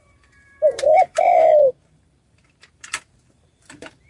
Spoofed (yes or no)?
yes